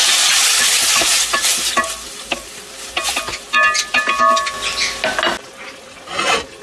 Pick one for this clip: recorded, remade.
recorded